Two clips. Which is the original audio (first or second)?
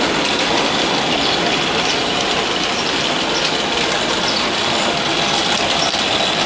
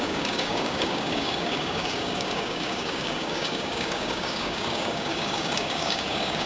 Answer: first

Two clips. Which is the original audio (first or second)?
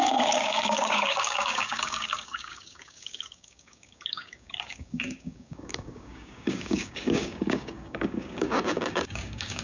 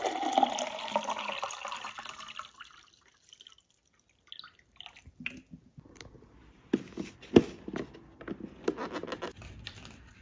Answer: second